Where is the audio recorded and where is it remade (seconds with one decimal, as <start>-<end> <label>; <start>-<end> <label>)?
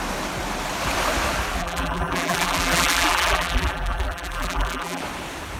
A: 0.0-1.6 recorded; 1.6-5.0 remade; 5.0-5.6 recorded